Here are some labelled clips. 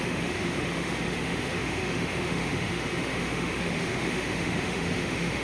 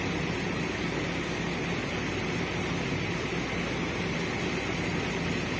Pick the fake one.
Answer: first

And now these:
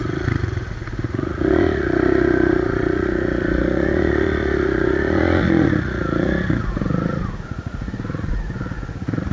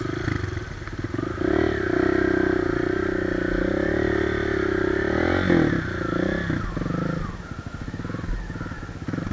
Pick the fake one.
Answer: first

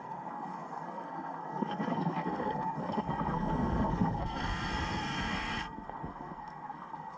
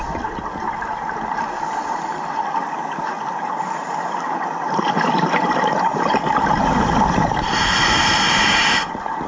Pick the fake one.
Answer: first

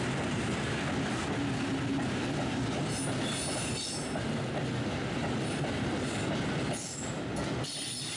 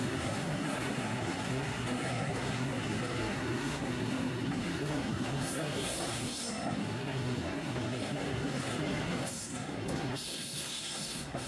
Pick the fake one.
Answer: second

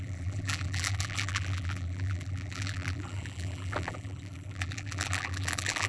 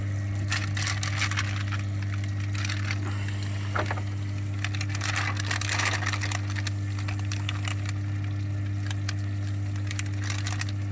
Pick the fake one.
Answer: first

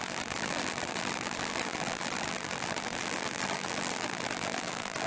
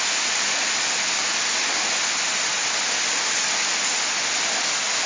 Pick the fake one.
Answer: first